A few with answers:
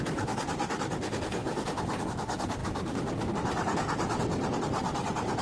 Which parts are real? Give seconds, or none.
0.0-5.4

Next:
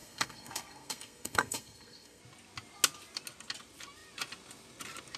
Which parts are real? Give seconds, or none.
2.2-5.2

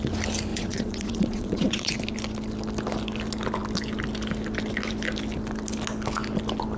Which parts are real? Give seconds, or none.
0.0-0.5; 1.9-6.8

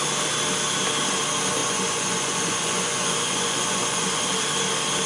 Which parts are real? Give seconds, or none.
0.0-1.6; 4.2-5.1